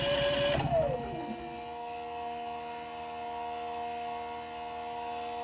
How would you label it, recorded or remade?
recorded